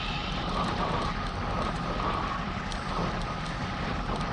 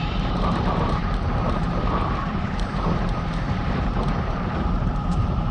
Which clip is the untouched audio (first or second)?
first